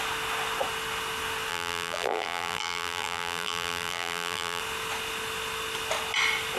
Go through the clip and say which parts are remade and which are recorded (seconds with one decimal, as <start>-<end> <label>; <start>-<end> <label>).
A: 0.0-1.5 recorded; 1.5-4.6 remade; 4.6-6.6 recorded